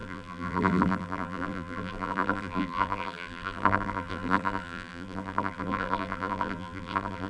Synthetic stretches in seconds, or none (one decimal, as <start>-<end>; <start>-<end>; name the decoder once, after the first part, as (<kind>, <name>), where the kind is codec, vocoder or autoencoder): 0.0-7.3 (vocoder, BigVGAN v2)